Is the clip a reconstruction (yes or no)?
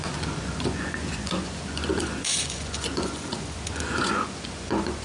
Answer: yes